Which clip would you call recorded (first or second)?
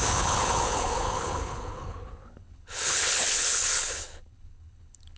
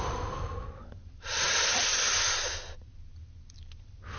second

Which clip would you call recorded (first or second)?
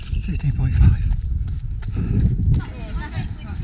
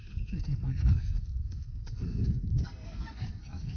first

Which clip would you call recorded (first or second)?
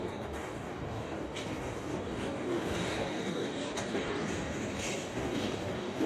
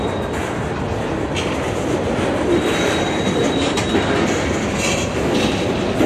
second